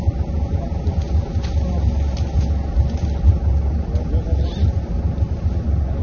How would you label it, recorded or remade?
recorded